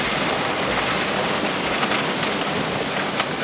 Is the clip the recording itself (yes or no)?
yes